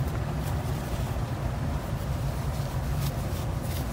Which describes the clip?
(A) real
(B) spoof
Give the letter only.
A